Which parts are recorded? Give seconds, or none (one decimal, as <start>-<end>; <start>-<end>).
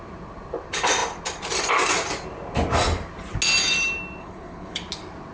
0.0-4.2; 4.8-5.3